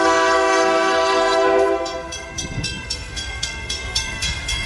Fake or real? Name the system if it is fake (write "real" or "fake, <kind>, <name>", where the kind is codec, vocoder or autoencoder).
fake, codec, SNAC